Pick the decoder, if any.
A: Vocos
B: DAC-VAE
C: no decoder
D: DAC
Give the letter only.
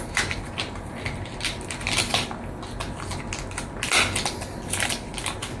C